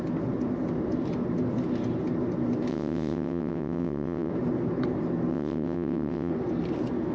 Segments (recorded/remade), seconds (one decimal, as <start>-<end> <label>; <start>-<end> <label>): 0.0-2.7 recorded; 2.7-4.3 remade; 4.3-5.3 recorded; 5.3-6.3 remade; 6.3-7.1 recorded